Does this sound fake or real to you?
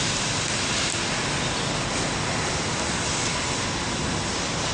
real